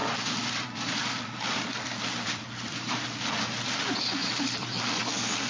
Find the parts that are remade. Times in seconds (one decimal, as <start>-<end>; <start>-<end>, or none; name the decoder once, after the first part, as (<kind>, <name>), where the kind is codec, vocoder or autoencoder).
0.0-3.0 (vocoder, BigVGAN v2); 4.2-4.8